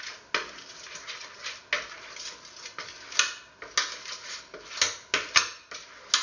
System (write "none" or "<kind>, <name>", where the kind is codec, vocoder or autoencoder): none